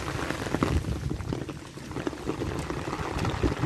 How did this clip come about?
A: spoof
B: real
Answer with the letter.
B